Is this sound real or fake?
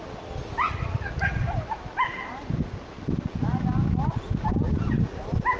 real